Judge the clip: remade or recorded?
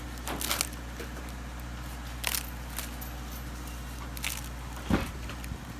recorded